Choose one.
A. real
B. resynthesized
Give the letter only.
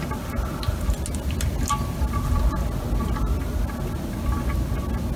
A